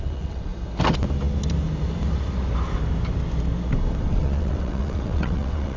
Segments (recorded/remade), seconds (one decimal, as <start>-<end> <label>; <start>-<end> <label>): 0.0-0.5 remade; 0.5-4.0 recorded; 4.0-5.8 remade